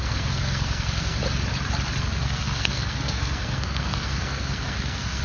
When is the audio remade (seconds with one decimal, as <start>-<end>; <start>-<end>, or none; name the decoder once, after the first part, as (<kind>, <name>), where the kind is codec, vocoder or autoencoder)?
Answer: 0.0-1.2 (codec, SNAC); 2.0-5.2